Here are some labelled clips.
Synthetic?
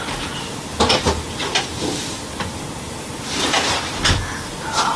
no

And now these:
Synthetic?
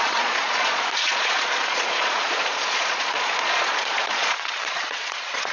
yes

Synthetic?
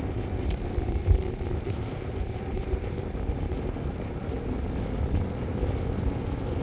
no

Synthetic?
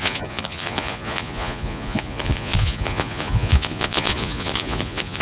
yes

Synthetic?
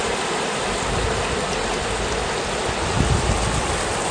no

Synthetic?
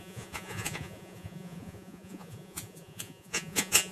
yes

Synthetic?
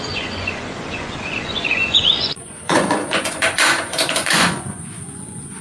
yes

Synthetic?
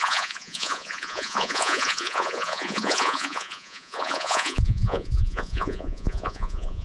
yes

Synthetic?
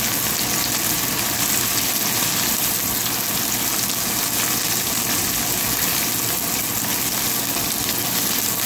no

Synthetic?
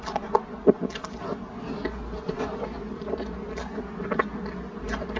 no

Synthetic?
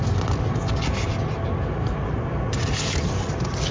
no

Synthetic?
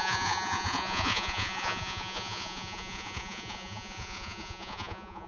yes